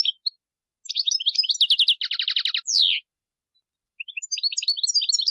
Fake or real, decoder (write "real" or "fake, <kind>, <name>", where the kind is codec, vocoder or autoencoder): real